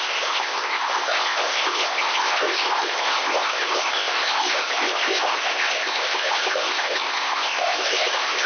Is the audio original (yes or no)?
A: no